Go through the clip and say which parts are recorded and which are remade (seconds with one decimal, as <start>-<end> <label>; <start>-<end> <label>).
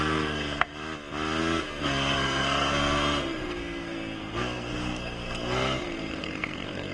0.0-0.7 remade; 0.7-1.4 recorded; 1.4-6.9 remade